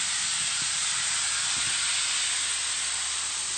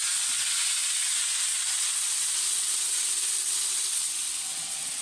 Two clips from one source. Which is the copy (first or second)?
second